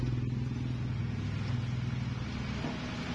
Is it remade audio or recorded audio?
recorded